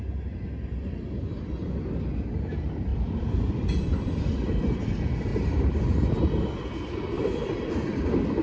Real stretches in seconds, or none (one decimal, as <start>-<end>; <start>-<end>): 0.0-2.9; 4.6-5.3; 5.8-8.4